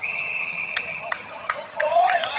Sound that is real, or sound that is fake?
fake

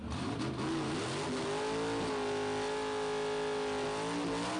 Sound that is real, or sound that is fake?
real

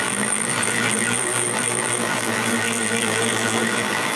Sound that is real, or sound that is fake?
fake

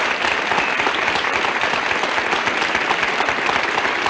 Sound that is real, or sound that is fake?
real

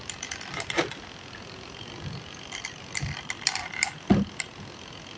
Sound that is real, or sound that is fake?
real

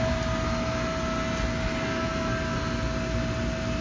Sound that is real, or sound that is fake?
real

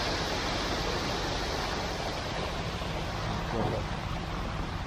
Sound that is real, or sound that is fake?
fake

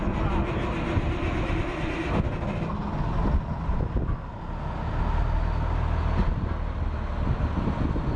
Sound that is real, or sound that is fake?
real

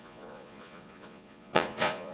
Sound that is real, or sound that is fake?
fake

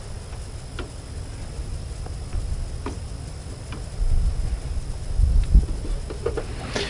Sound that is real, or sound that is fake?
real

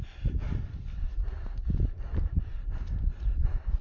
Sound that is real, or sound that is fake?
fake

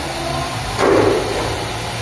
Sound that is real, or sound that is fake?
real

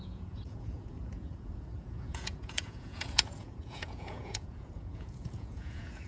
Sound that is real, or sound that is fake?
fake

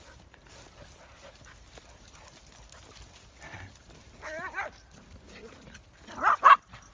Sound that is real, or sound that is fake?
real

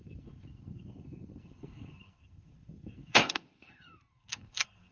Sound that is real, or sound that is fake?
fake